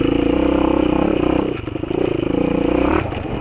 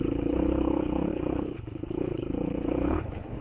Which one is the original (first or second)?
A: first